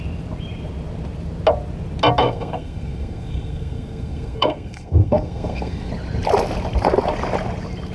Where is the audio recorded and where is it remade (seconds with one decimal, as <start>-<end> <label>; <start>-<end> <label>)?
0.0-2.2 recorded; 2.2-5.9 remade; 5.9-7.9 recorded